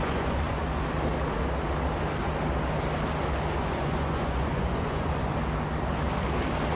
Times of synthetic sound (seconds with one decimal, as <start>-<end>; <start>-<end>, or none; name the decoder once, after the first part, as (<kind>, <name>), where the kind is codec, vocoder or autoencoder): 0.0-0.6 (vocoder, Vocos); 3.6-5.3